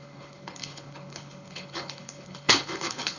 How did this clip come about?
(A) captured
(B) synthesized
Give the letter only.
B